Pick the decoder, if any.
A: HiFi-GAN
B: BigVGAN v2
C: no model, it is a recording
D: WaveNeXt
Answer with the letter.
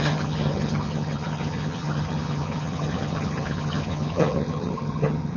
A